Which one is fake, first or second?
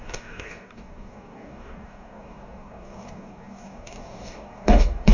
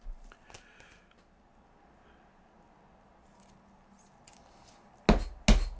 first